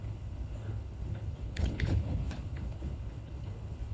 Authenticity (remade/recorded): remade